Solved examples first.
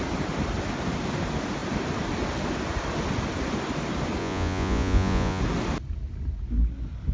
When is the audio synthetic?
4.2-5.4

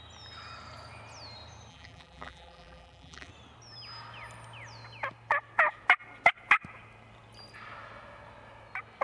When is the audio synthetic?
1.7-3.3

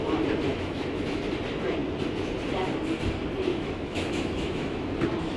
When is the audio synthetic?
0.5-1.2; 3.5-4.9

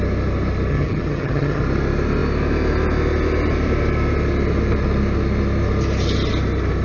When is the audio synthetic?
0.7-1.6